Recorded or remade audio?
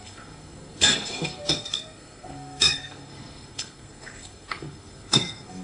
remade